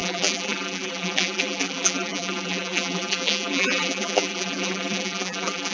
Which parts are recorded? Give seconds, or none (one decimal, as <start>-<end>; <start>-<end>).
none